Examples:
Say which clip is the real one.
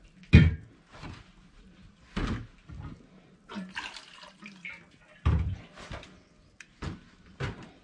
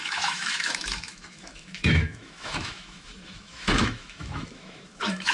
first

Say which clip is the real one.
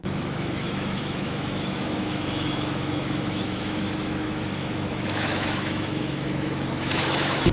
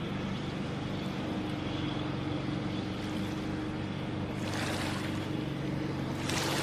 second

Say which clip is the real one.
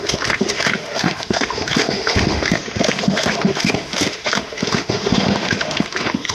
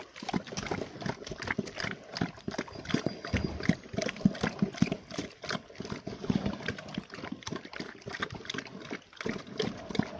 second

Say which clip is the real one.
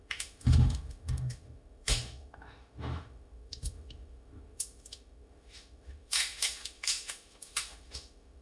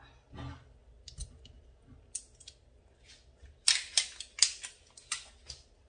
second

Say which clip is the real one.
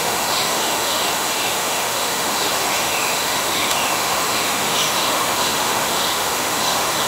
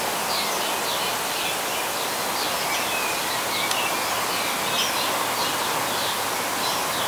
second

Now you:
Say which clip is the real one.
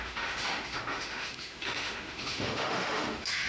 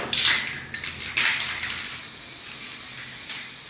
second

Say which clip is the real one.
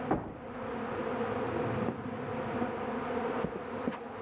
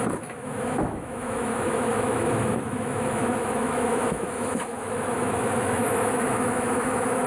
first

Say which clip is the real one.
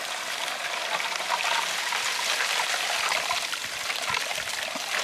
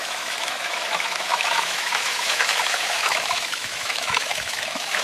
first